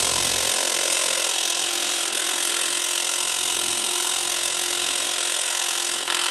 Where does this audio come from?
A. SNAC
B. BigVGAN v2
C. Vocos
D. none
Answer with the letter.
A